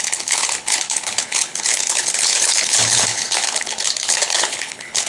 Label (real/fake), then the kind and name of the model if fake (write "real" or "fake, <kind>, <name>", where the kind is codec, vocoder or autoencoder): fake, codec, HILCodec